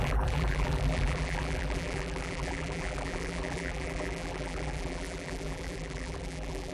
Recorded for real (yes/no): no